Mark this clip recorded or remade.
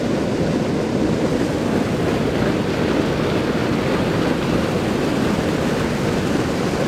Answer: recorded